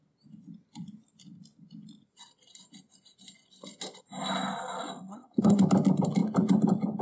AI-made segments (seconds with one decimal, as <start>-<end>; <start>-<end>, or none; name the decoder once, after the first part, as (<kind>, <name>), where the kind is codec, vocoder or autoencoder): 5.1-5.6 (codec, SNAC)